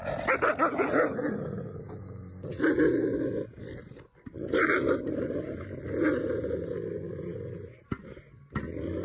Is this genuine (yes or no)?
yes